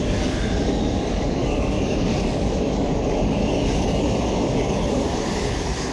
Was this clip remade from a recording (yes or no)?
yes